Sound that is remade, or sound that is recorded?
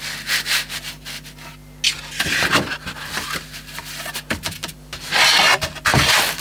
recorded